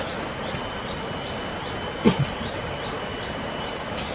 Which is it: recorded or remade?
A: recorded